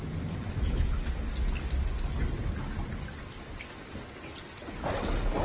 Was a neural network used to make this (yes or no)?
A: no